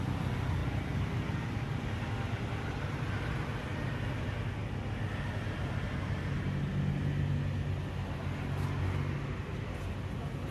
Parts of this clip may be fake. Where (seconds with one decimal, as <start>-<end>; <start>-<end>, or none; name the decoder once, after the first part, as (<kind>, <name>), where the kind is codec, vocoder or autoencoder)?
none